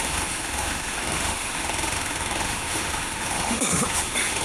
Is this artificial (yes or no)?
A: yes